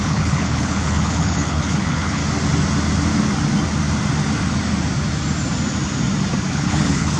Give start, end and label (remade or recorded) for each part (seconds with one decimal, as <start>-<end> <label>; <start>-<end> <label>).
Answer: 0.0-2.2 remade; 2.2-6.5 recorded; 6.5-7.2 remade